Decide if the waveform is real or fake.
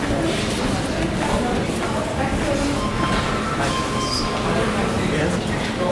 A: real